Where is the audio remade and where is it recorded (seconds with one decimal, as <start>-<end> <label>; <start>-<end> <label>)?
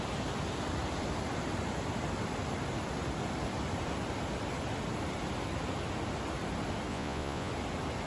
0.0-6.9 recorded; 6.9-7.5 remade; 7.5-8.1 recorded